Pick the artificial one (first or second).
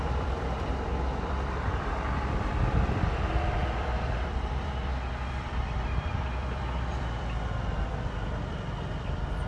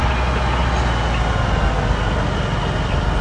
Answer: first